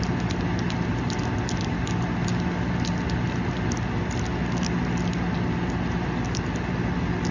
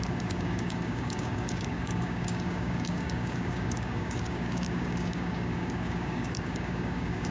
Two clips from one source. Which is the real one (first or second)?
first